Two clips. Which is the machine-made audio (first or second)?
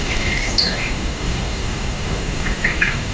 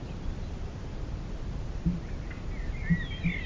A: first